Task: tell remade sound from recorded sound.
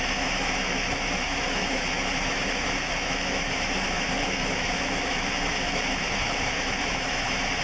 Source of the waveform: remade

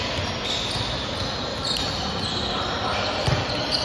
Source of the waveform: recorded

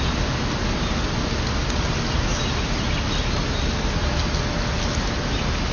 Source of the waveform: recorded